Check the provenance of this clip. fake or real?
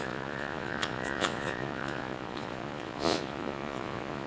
fake